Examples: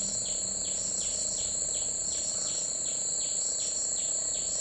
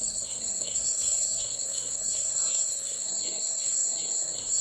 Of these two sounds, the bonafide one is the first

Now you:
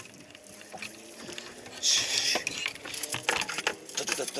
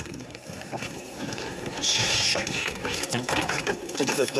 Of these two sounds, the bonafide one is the first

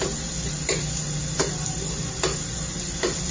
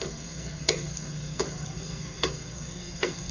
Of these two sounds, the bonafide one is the first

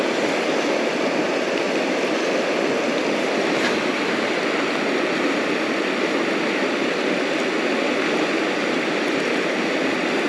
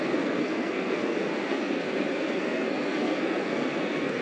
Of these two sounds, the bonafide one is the first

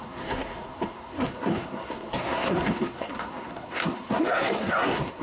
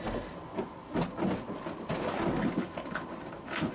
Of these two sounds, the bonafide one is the second